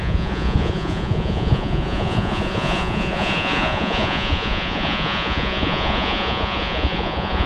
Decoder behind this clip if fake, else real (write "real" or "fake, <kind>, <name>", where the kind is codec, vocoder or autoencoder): fake, vocoder, Vocos